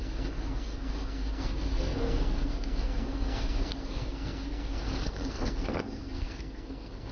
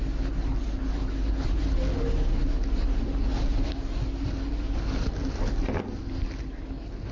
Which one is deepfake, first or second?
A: first